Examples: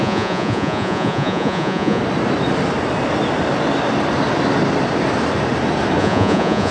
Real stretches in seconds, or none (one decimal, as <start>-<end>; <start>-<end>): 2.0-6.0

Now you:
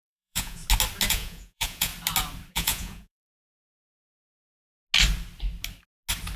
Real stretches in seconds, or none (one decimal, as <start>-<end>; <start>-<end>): 0.6-1.1; 1.9-2.5; 3.3-6.4

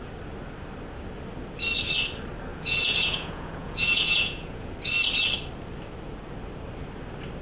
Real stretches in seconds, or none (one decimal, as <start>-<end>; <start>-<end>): 0.0-2.5; 4.7-7.4